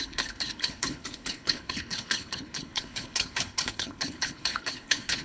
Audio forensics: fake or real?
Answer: fake